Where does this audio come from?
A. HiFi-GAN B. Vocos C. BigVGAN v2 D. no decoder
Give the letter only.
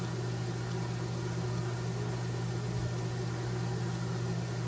D